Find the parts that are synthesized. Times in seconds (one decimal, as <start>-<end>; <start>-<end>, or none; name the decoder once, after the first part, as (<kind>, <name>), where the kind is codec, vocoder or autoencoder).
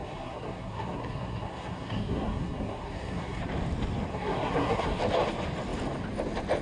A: 0.0-3.4 (codec, SNAC); 4.1-5.0